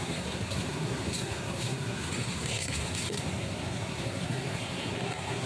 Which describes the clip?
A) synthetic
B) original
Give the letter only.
A